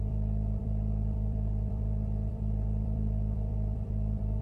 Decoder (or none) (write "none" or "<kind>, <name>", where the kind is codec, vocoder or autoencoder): vocoder, BigVGAN v2